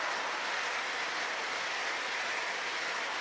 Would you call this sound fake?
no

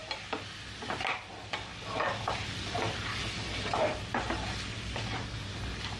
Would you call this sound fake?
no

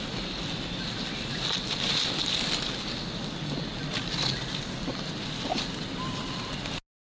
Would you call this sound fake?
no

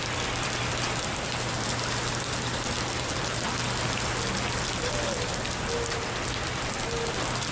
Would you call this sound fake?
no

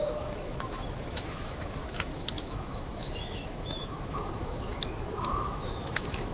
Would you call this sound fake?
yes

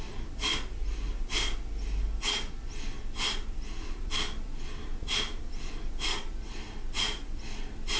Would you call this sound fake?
no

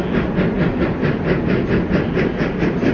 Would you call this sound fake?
no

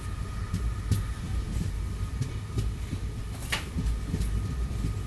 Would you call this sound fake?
no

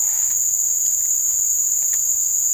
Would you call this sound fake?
no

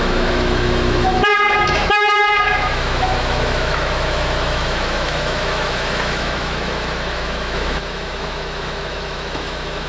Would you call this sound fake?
yes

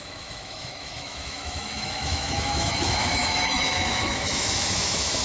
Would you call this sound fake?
yes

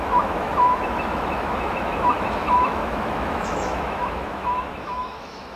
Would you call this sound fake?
yes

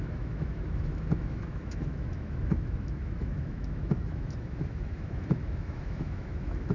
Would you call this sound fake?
yes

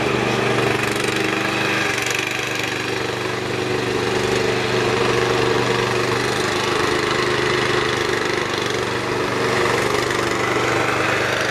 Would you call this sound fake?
no